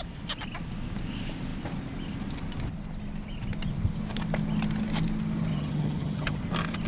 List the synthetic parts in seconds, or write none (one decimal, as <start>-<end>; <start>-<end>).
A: 5.5-6.4

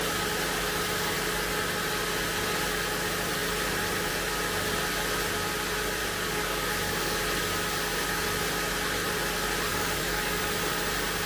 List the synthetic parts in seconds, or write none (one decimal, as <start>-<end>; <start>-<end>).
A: 6.0-7.2; 9.7-10.4

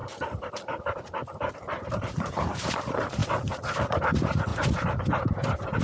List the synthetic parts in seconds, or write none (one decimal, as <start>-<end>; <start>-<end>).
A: 0.0-4.5

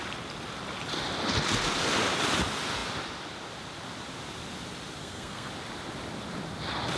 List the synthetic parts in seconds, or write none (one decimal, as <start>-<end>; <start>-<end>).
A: 5.0-5.5